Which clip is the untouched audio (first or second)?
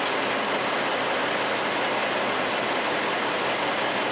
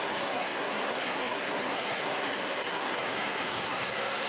first